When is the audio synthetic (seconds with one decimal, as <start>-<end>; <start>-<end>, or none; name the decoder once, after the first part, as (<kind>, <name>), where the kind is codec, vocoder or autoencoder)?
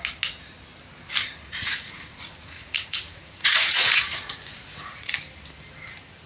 1.3-5.1 (vocoder, Vocos)